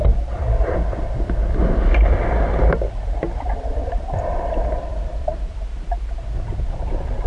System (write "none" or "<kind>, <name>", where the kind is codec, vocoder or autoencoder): vocoder, BigVGAN v2